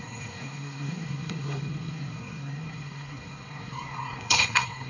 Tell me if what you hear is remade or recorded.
remade